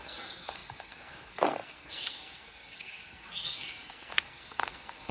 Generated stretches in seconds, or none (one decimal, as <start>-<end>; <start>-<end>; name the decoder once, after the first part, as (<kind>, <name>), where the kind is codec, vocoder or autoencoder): 0.0-5.1 (codec, SNAC)